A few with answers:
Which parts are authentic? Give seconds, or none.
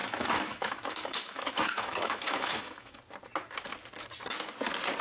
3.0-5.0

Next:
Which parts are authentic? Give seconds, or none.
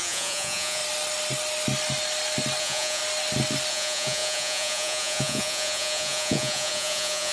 0.8-2.6; 3.0-3.7